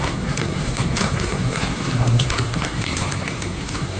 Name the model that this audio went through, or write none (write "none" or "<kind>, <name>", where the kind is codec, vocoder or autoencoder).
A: codec, SNAC